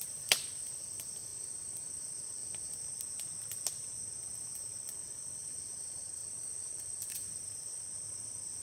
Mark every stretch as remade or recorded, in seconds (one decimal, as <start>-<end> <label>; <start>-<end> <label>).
0.0-2.4 remade; 2.4-4.2 recorded; 4.2-6.2 remade; 6.2-6.8 recorded; 6.8-8.6 remade